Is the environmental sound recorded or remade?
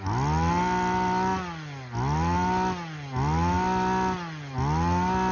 recorded